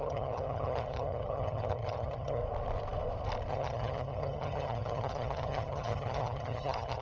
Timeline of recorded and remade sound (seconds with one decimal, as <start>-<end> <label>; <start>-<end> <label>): 0.0-2.4 remade; 2.4-3.5 recorded; 3.5-7.0 remade